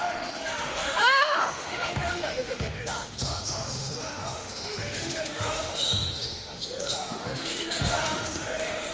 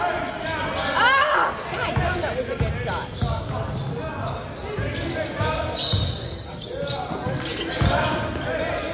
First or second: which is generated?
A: first